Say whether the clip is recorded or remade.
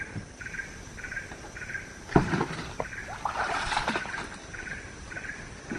remade